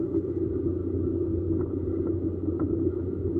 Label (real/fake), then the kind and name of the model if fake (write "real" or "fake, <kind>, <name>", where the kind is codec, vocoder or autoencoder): real